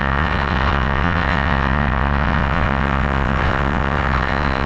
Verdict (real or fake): fake